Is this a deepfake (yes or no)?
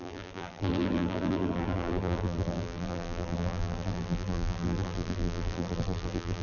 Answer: yes